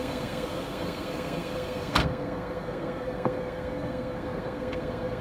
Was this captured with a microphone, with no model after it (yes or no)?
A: no